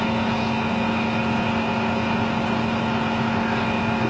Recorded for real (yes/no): yes